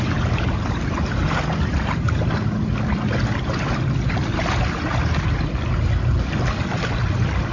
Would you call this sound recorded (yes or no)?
yes